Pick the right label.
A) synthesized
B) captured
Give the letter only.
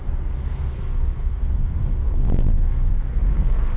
A